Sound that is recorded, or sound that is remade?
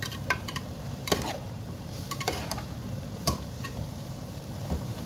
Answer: remade